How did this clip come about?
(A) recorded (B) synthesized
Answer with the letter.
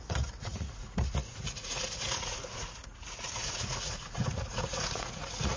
B